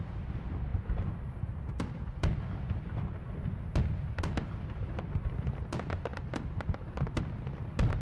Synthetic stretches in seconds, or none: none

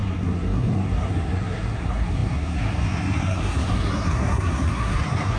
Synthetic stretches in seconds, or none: 0.0-5.4 (codec, SNAC)

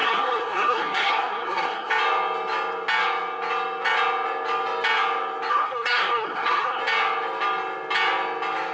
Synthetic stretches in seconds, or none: 0.0-1.9 (codec, SNAC); 5.5-6.8

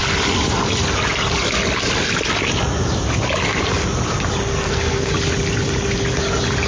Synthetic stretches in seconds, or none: 4.5-5.1 (codec, SNAC)

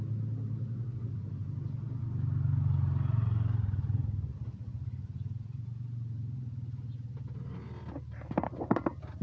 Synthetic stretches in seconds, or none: none

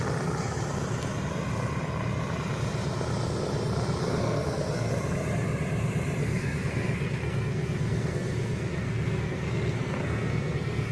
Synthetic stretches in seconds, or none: 4.0-4.9 (codec, SNAC); 6.2-10.9

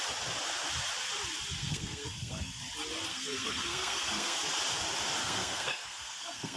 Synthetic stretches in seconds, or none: 1.6-2.6 (codec, SNAC); 3.1-4.4; 5.2-6.6